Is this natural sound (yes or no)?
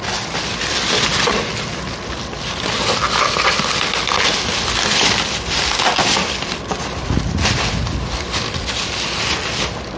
yes